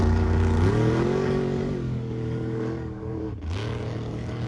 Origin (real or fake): fake